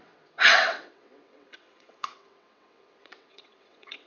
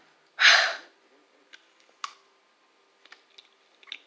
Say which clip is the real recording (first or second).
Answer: second